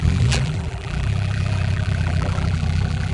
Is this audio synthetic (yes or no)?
yes